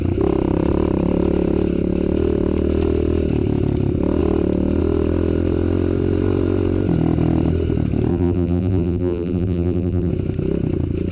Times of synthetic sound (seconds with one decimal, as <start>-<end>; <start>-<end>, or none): 8.1-10.1